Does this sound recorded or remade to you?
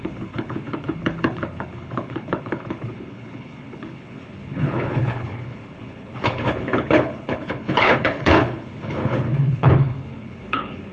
remade